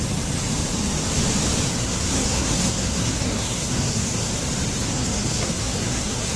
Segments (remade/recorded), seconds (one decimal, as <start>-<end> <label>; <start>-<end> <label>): 0.0-1.8 recorded; 1.8-4.3 remade; 4.3-4.8 recorded; 4.8-6.4 remade

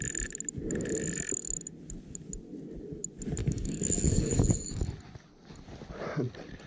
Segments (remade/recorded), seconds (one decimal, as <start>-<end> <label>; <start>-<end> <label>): 0.0-3.4 recorded; 3.4-4.8 remade; 4.8-6.7 recorded

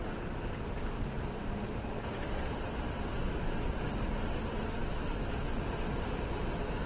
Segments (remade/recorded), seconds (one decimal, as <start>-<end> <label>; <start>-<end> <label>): 0.0-6.9 recorded